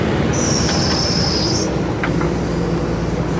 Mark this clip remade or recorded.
recorded